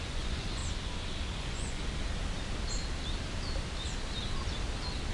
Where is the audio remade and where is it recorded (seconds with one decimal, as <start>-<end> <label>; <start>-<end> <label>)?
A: 0.0-0.6 remade; 0.6-1.4 recorded; 1.4-1.8 remade; 1.8-5.1 recorded